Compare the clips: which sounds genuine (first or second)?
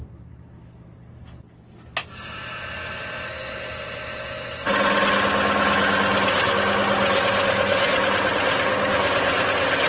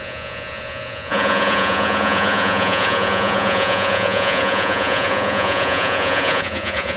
first